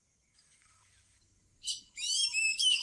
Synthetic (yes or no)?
yes